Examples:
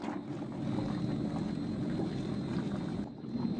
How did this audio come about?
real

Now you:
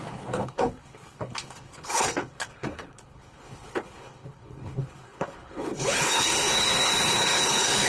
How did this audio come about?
fake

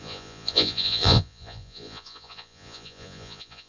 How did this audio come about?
fake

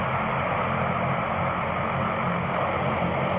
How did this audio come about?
real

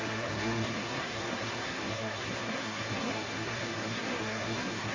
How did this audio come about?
fake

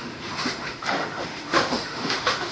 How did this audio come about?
fake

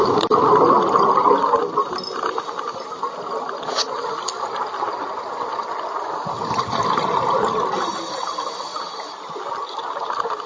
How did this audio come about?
real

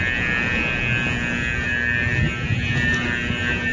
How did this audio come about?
real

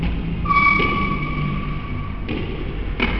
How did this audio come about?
real